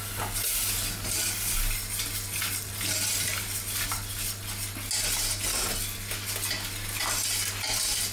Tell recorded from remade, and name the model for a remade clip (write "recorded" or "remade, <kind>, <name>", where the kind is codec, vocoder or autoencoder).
recorded